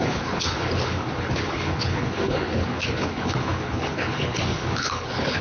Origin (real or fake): fake